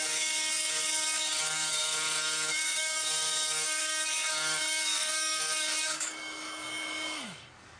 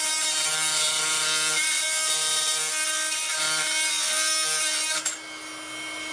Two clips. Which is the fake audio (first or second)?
first